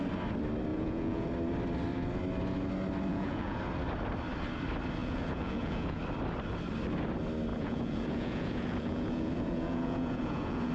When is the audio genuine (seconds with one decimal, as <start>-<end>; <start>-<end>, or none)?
0.0-0.7; 1.3-3.1; 3.6-5.0; 6.0-7.5

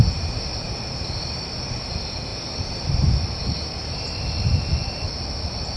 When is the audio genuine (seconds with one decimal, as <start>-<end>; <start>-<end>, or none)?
0.0-5.8

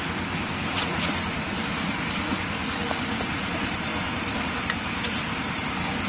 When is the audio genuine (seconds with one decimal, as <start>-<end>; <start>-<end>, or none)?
0.0-0.7; 1.5-6.1

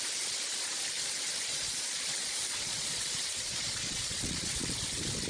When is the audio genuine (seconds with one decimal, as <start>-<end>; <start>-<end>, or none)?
0.0-1.5; 4.7-5.3

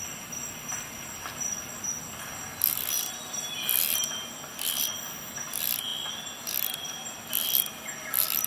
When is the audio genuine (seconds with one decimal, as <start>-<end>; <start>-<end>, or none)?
0.0-8.5

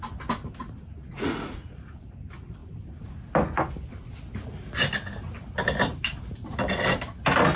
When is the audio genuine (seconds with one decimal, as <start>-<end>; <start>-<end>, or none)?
0.0-0.9; 2.0-7.6

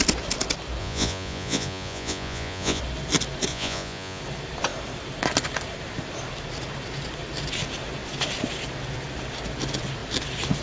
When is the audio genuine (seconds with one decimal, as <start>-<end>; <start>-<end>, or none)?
0.0-0.8; 2.8-3.5; 4.2-10.6